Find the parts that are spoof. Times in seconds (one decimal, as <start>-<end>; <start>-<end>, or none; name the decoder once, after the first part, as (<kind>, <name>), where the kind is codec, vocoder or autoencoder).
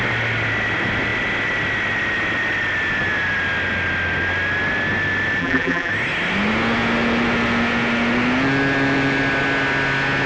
5.4-5.9 (vocoder, BigVGAN v2)